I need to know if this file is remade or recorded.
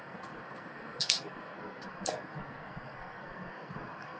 remade